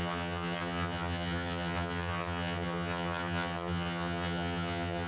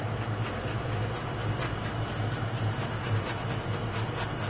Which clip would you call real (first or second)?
second